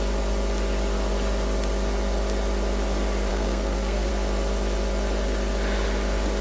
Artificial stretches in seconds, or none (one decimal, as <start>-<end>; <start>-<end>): 3.3-4.1